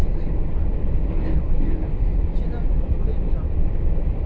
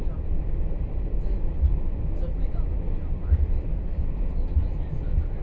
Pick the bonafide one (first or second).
second